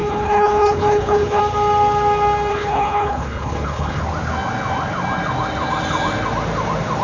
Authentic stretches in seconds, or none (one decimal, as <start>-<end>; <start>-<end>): 1.4-2.5; 4.0-7.0